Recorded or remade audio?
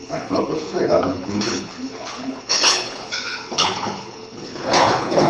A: remade